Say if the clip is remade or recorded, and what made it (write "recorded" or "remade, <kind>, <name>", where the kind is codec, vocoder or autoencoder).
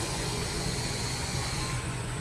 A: remade, vocoder, Vocos